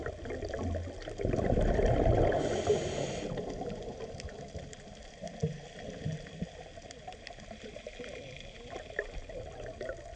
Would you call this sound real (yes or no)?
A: yes